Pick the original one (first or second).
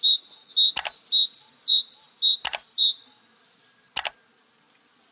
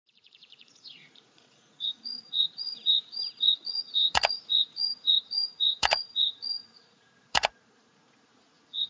first